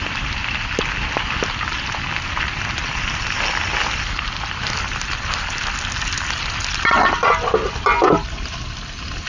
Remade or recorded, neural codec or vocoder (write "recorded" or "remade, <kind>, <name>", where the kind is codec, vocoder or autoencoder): recorded